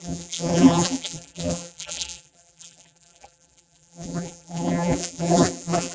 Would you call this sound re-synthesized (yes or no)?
yes